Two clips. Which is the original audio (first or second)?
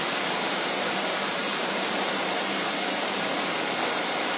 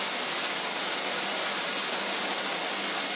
second